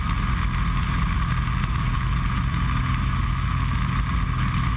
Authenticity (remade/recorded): recorded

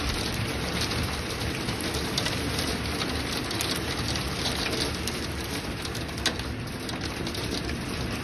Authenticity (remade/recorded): recorded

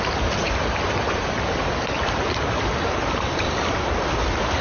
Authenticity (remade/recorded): remade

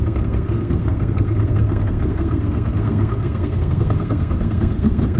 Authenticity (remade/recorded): remade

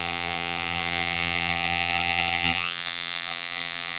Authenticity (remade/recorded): remade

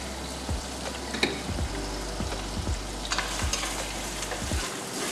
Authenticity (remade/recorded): recorded